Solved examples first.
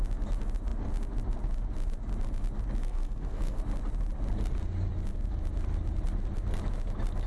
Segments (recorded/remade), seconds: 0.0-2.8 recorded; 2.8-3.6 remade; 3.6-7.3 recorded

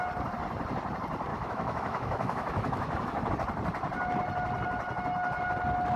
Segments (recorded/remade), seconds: 0.0-1.3 recorded; 1.3-3.3 remade; 3.3-6.0 recorded

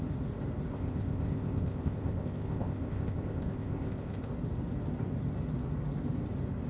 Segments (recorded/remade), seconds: 0.0-0.7 recorded; 0.7-4.3 remade; 4.3-6.7 recorded

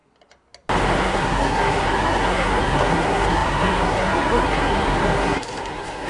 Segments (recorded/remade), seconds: 0.0-1.0 recorded; 1.0-6.1 remade